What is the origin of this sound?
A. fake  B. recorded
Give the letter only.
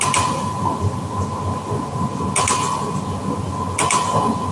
B